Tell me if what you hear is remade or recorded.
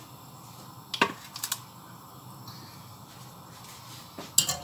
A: recorded